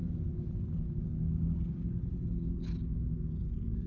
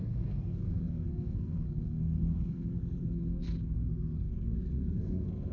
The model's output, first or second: second